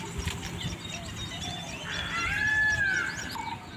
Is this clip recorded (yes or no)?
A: yes